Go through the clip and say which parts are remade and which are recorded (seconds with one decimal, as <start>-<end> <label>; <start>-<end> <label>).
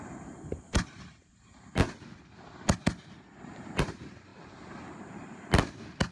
0.0-1.8 remade; 1.8-3.4 recorded; 3.4-4.3 remade; 4.3-6.1 recorded